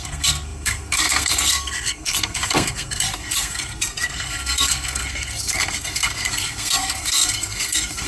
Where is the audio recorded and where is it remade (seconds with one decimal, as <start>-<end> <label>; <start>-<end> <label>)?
0.0-8.1 remade